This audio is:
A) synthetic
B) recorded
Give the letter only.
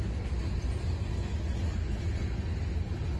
B